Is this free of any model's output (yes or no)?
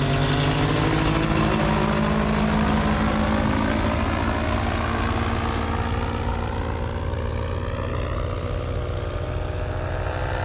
yes